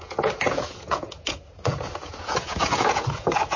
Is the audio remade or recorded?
remade